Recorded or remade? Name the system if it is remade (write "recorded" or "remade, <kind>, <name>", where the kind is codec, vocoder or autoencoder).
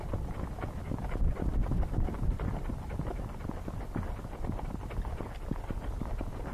recorded